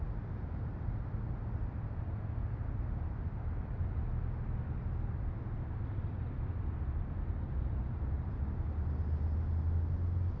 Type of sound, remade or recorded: recorded